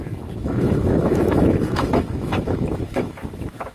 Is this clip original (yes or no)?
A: no